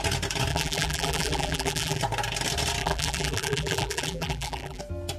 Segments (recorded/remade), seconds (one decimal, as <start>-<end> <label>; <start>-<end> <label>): 0.0-0.5 recorded; 0.5-2.0 remade; 2.0-2.8 recorded; 2.8-4.8 remade; 4.8-5.2 recorded

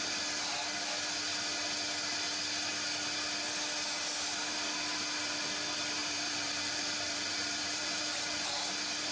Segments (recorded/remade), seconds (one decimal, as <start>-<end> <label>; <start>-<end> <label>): 0.0-6.0 recorded; 6.0-8.6 remade; 8.6-9.1 recorded

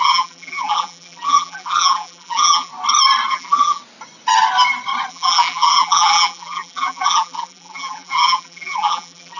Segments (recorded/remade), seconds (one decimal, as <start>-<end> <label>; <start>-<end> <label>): 0.0-2.7 remade; 2.7-3.3 recorded; 3.3-3.8 remade; 3.8-5.1 recorded; 5.1-9.4 remade

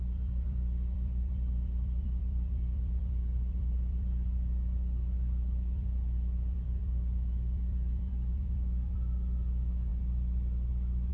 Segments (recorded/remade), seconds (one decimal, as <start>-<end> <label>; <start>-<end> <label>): 0.0-11.1 remade

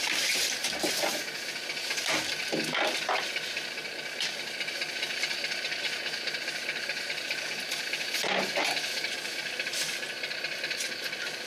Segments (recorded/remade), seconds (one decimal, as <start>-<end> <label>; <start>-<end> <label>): 0.0-11.5 recorded